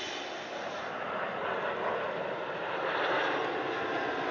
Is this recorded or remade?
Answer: recorded